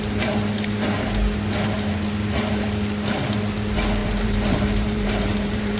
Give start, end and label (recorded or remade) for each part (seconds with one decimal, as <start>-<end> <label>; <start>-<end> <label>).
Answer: 0.0-4.0 recorded; 4.0-5.8 remade